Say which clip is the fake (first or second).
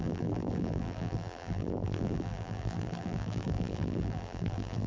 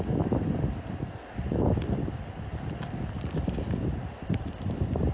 first